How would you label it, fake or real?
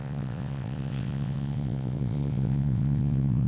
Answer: fake